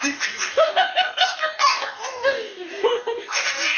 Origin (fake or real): fake